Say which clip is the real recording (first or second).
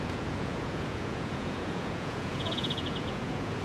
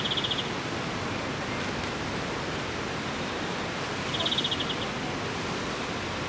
second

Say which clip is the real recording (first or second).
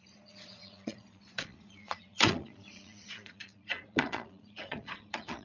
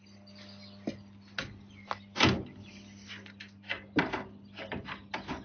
second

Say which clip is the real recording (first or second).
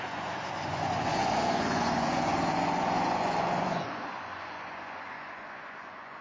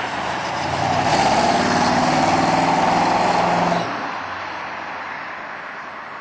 second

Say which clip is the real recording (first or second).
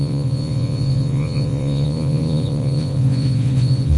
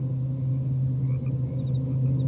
second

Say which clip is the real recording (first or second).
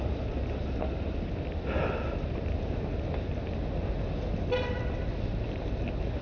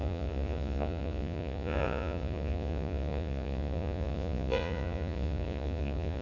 first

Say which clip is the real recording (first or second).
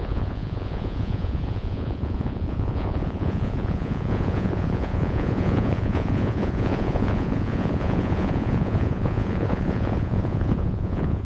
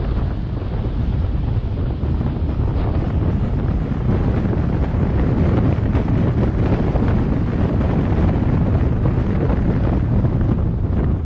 second